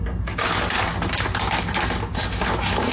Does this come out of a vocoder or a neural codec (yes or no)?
no